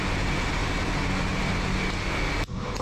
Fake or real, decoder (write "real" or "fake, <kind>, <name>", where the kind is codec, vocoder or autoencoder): real